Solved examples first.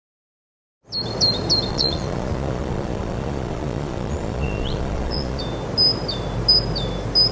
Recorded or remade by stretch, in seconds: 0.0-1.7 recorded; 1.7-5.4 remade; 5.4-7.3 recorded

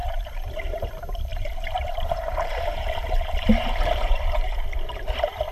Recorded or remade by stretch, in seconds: 0.0-0.9 remade; 0.9-1.3 recorded; 1.3-4.6 remade; 4.6-5.5 recorded

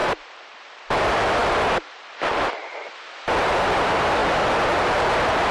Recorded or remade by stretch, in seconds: 0.0-0.6 remade; 0.6-5.5 recorded

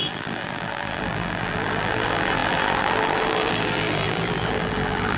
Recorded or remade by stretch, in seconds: 0.0-5.2 remade